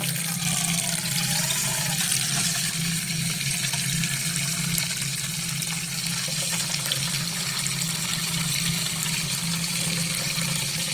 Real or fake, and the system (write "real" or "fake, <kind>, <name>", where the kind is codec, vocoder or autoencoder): real